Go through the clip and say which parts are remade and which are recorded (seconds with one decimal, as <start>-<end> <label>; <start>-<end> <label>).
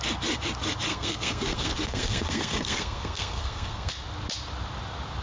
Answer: 0.0-0.9 recorded; 0.9-3.9 remade; 3.9-5.2 recorded